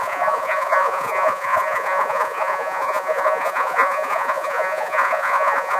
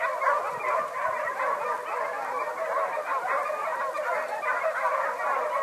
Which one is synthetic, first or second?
first